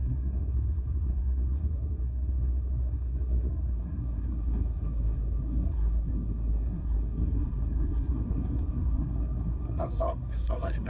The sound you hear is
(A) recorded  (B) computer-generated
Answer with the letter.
B